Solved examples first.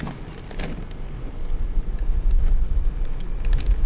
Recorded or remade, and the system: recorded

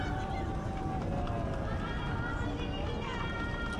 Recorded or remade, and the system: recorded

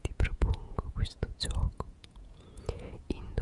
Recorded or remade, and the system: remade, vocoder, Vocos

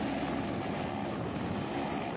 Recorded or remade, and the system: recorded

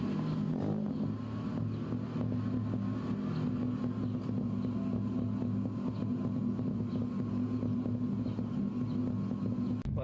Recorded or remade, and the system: recorded